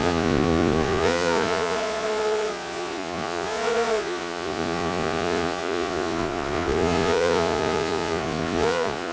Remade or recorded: remade